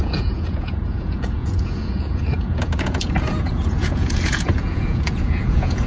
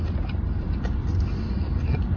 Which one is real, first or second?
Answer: second